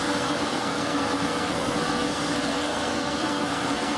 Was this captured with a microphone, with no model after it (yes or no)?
no